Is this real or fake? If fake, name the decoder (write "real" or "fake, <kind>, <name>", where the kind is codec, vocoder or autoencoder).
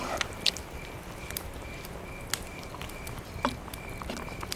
real